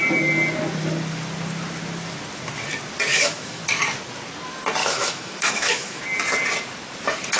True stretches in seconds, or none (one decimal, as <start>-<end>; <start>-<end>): 0.0-3.1; 3.6-4.8; 6.0-7.4